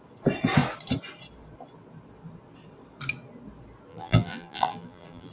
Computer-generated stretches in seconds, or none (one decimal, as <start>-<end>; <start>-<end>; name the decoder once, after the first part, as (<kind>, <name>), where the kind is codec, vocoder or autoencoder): 3.9-5.3 (vocoder, BigVGAN v2)